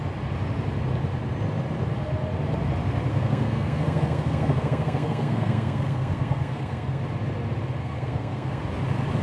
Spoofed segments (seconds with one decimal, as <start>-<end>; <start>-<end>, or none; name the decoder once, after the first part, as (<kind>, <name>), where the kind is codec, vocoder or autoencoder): 3.1-7.0 (codec, SNAC); 7.8-8.6

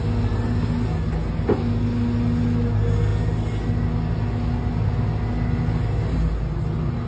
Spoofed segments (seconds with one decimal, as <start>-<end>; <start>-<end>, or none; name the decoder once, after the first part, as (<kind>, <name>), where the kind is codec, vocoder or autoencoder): none

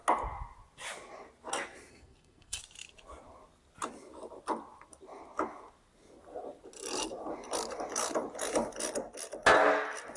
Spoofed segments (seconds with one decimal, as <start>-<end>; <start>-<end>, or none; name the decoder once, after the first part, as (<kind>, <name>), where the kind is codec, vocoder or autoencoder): 1.9-2.6 (codec, SNAC)

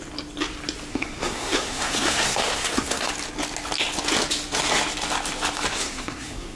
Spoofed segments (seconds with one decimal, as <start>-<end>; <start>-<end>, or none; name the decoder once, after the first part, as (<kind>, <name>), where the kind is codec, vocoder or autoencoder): 0.9-3.1 (codec, SNAC); 5.7-6.6

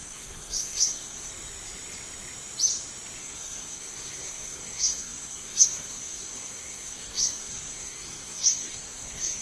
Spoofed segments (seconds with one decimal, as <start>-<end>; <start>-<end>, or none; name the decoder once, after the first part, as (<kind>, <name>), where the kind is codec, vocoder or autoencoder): 0.0-1.3 (codec, SNAC); 3.2-9.4

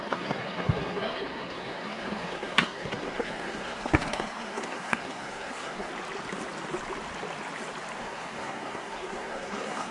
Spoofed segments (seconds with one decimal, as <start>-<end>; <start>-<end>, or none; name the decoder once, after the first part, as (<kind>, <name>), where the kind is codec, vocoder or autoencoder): 0.0-5.9 (codec, SNAC); 8.0-9.9

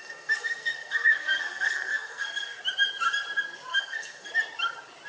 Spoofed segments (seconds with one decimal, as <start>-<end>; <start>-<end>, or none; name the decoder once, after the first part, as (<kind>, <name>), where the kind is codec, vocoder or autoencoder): 0.0-2.6 (codec, SNAC); 3.7-4.3